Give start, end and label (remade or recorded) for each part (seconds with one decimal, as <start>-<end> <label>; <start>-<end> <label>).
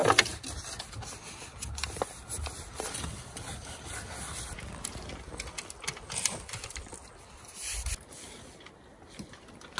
0.0-9.8 recorded